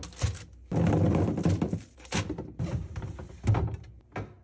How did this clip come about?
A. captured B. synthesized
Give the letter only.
A